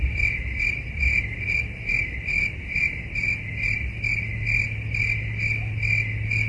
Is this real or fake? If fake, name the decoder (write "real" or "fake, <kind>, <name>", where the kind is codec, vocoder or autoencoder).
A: real